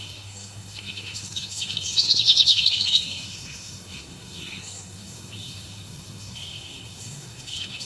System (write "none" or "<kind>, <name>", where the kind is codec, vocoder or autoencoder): codec, SNAC